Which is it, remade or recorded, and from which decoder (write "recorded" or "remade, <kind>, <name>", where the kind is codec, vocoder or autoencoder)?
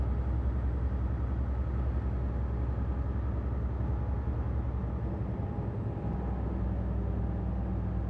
recorded